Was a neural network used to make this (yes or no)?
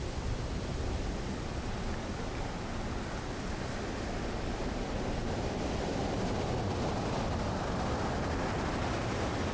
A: no